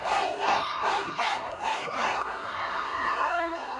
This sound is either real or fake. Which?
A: fake